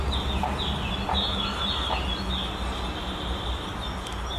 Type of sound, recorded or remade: recorded